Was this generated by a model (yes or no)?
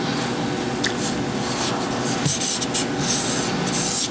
no